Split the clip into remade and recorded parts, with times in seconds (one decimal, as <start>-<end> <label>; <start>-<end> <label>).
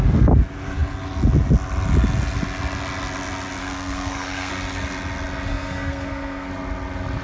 0.0-3.6 recorded; 3.6-4.5 remade; 4.5-5.5 recorded; 5.5-6.5 remade; 6.5-7.2 recorded